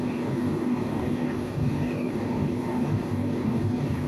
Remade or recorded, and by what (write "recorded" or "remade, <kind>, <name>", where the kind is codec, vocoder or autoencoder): remade, codec, DAC